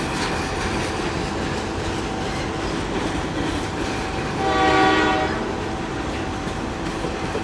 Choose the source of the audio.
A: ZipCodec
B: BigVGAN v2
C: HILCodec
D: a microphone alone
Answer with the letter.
D